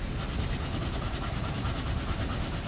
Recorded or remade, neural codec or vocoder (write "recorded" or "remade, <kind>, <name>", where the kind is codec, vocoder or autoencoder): recorded